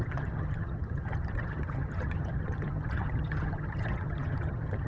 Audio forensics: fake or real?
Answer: fake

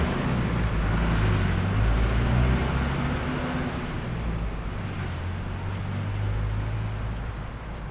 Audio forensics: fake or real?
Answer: real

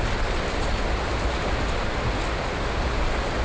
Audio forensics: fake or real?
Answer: real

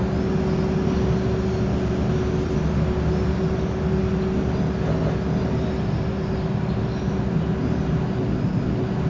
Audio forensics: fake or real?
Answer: real